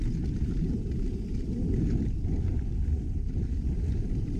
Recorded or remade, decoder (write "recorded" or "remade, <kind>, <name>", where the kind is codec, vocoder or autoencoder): recorded